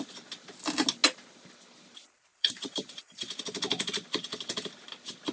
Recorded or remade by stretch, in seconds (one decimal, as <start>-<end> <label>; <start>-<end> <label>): 0.0-2.3 recorded; 2.3-3.4 remade; 3.4-5.3 recorded